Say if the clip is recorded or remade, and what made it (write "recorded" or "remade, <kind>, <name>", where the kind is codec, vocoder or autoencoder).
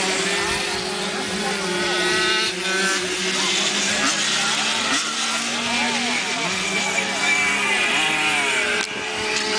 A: recorded